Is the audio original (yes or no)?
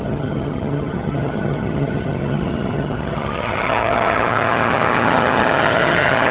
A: no